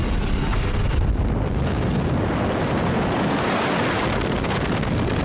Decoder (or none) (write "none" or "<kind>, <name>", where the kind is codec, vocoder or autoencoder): none